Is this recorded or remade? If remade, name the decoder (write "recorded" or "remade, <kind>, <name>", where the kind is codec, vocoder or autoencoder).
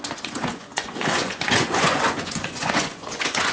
remade, vocoder, Vocos